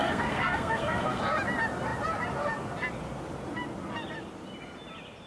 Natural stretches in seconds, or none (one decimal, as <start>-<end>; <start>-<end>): 1.2-5.3